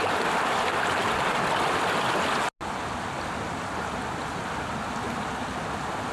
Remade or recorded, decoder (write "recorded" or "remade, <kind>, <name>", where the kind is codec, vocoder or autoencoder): recorded